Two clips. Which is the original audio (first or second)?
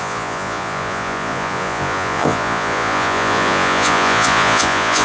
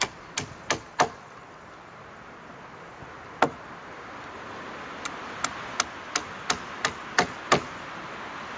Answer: second